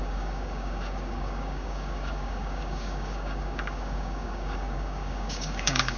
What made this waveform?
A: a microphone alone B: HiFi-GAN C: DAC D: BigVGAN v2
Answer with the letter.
C